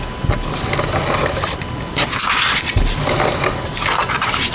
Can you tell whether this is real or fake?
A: real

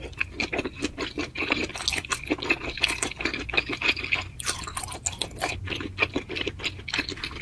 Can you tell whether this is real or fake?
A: real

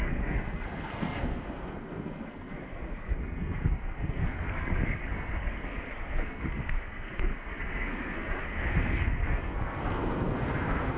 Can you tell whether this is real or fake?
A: fake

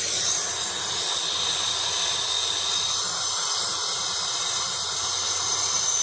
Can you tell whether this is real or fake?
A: real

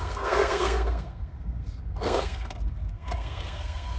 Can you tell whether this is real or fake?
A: fake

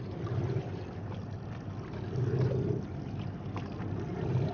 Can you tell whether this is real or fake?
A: real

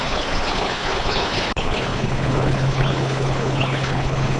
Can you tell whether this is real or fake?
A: fake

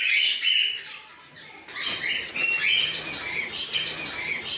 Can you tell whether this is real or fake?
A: real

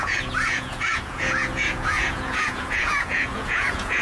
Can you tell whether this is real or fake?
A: fake